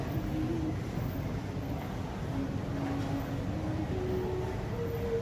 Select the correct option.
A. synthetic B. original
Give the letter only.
B